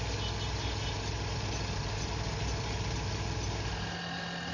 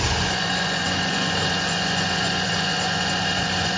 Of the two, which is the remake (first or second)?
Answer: second